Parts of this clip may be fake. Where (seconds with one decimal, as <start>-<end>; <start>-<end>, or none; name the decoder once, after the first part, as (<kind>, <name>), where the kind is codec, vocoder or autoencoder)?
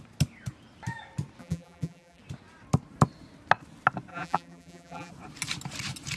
1.4-2.2 (vocoder, BigVGAN v2); 4.1-5.1